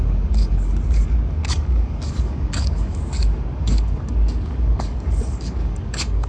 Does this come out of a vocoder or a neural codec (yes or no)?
yes